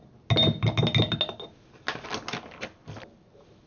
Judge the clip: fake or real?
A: real